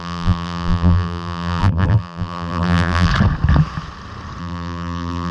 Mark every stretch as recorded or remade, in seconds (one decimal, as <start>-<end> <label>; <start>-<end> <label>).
0.0-3.1 remade; 3.1-4.4 recorded; 4.4-5.3 remade